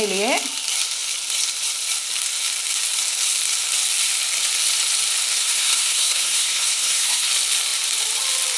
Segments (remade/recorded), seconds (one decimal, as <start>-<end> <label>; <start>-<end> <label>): 0.0-5.4 recorded; 5.4-7.3 remade; 7.3-8.6 recorded